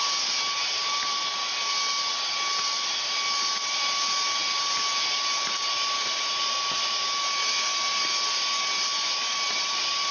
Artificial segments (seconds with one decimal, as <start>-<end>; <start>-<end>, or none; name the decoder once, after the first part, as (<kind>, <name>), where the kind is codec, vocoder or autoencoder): 0.6-1.1 (vocoder, BigVGAN v2)